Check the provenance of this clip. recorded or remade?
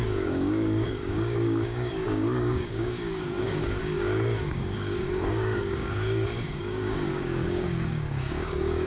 remade